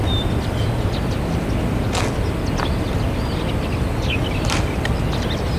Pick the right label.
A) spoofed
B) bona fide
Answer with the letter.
B